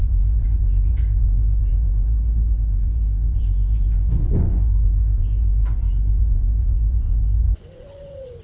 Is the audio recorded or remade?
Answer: remade